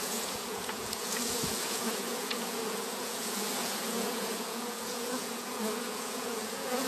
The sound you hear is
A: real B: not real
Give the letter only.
B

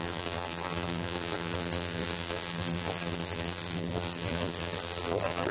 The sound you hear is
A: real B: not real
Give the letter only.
B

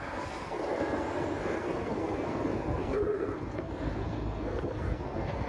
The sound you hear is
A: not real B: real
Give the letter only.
A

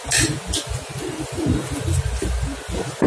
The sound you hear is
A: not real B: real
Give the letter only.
B